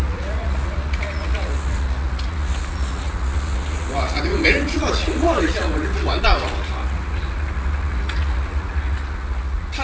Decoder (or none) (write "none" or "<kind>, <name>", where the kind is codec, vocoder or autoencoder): vocoder, Vocos